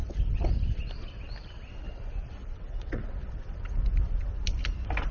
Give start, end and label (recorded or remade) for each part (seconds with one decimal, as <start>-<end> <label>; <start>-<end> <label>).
0.0-2.4 recorded; 2.4-3.0 remade; 3.0-5.1 recorded